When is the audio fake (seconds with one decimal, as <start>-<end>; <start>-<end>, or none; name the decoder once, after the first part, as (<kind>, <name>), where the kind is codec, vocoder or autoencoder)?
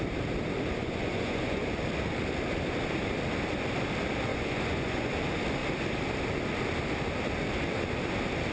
0.8-1.7 (vocoder, Vocos); 4.3-5.1